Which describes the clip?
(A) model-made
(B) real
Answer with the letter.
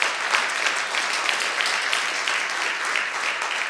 B